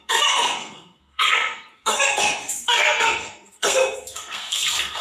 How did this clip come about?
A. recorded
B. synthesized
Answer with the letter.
B